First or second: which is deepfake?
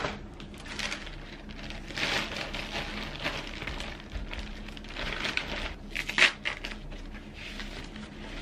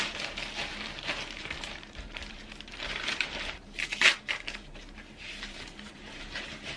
second